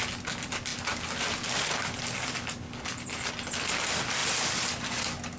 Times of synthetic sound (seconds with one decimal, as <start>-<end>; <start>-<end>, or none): 0.7-3.3